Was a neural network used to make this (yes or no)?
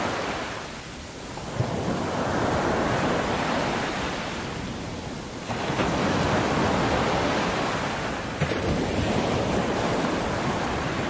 no